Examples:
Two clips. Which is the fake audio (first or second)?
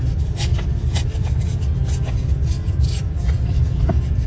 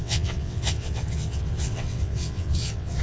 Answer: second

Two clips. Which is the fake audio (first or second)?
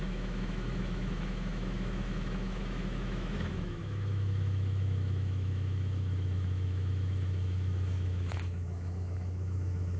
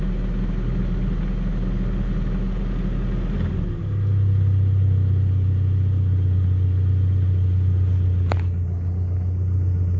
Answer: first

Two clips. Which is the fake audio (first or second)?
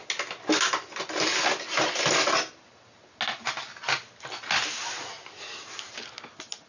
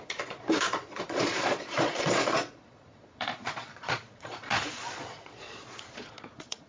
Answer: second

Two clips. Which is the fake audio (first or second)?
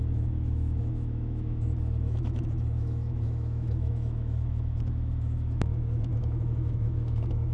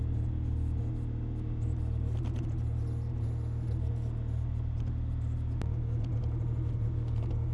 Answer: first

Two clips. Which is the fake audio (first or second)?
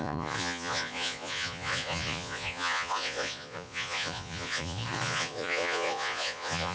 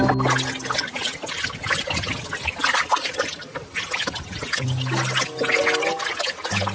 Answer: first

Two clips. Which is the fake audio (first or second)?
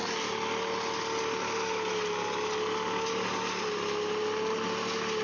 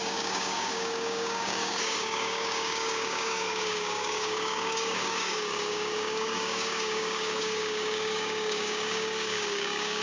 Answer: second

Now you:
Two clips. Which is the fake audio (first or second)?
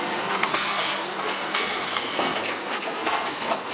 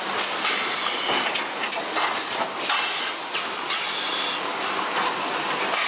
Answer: first